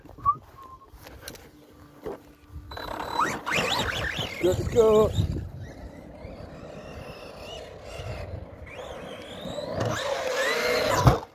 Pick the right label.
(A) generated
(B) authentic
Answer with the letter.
B